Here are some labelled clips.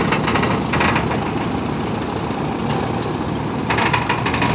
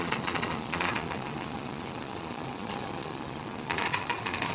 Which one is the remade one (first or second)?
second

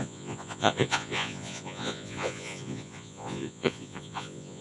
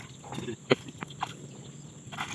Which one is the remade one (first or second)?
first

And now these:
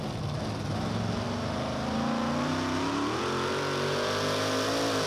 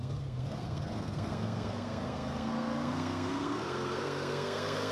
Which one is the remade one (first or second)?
second